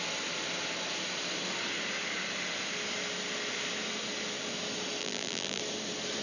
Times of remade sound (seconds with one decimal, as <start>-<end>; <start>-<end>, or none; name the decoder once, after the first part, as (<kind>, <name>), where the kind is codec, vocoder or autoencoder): 5.0-5.6 (vocoder, BigVGAN v2)